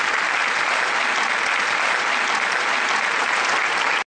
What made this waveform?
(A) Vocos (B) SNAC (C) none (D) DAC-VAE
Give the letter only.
C